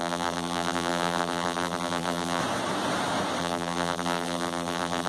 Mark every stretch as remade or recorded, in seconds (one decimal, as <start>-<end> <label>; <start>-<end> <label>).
0.0-2.4 remade; 2.4-3.4 recorded; 3.4-5.1 remade